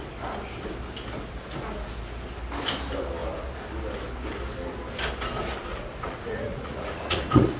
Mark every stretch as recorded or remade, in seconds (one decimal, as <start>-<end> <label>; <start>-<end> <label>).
0.0-5.7 recorded; 5.7-7.6 remade